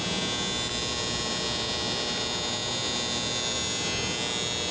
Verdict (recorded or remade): recorded